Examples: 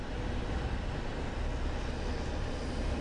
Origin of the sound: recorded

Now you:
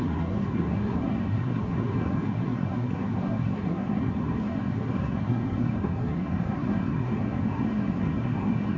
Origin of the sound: remade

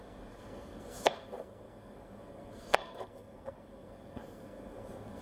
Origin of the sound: remade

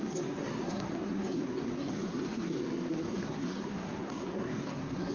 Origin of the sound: remade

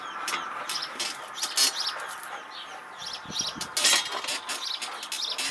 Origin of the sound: recorded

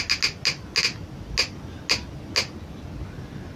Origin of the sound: recorded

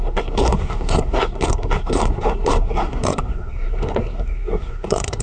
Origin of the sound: remade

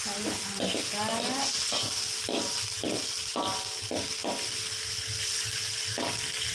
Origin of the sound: recorded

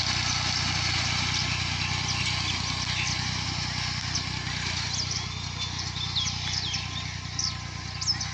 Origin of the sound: recorded